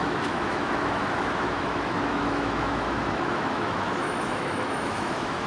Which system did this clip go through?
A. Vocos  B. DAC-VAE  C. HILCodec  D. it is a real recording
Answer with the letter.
B